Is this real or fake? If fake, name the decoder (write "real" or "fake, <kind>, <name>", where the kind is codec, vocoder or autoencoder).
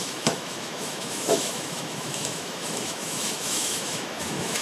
fake, autoencoder, DAC-VAE